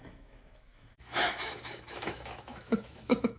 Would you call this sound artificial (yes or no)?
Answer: yes